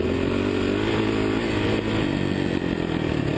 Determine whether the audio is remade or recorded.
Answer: recorded